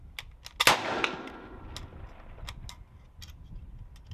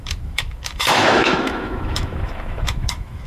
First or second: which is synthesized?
second